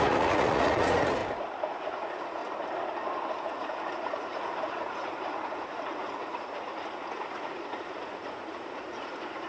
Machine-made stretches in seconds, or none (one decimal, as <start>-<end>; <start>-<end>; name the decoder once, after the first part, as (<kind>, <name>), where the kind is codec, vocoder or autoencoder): 0.0-1.2 (vocoder, Vocos); 1.8-2.4; 3.4-9.5